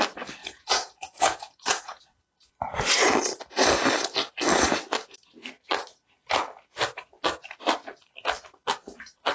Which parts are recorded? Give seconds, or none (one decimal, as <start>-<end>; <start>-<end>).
0.0-0.4; 2.0-9.3